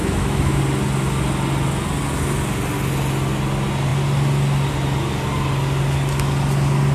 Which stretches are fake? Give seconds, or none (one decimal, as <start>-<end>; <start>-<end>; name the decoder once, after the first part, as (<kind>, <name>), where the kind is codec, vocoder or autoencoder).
0.0-0.6 (autoencoder, DAC-VAE)